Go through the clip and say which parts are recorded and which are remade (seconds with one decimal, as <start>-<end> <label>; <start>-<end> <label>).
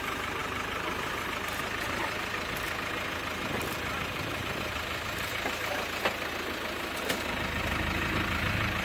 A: 0.0-0.4 recorded; 0.4-1.1 remade; 1.1-4.4 recorded; 4.4-6.3 remade; 6.3-8.8 recorded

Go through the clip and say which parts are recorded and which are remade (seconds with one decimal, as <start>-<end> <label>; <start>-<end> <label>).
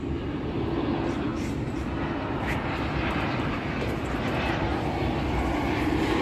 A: 0.0-1.3 recorded; 1.3-3.7 remade; 3.7-4.7 recorded; 4.7-6.2 remade